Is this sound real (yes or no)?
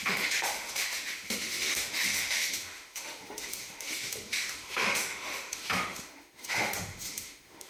no